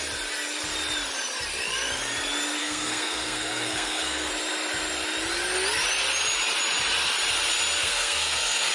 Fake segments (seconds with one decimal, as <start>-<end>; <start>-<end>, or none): 2.6-4.3; 7.8-8.7

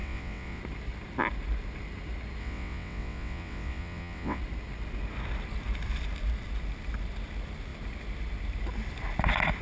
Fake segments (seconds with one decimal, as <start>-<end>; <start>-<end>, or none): 0.0-0.6; 2.4-4.4

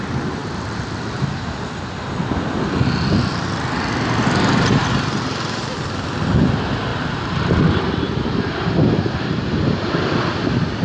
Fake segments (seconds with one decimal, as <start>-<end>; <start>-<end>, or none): 0.4-1.9; 6.9-9.9